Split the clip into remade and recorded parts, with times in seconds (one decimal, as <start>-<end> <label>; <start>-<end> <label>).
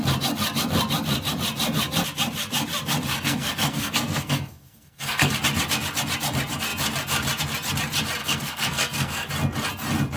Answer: 0.0-3.1 recorded; 3.1-5.3 remade; 5.3-8.2 recorded; 8.2-9.3 remade; 9.3-10.2 recorded